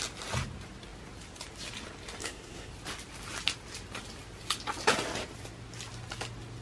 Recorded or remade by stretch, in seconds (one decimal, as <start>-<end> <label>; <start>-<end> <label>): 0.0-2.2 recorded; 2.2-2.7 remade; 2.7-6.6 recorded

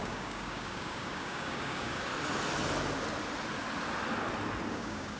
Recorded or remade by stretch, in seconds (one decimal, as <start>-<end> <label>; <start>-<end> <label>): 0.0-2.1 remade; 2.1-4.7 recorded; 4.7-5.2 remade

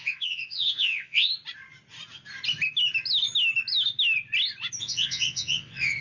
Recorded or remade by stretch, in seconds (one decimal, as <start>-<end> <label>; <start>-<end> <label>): 0.0-1.3 remade; 1.3-4.8 recorded; 4.8-6.0 remade

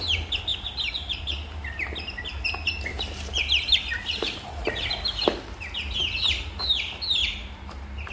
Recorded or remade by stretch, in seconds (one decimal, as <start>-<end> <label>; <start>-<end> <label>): 0.0-0.5 recorded; 0.5-5.4 remade; 5.4-7.2 recorded; 7.2-8.1 remade